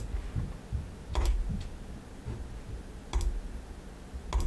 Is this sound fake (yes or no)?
no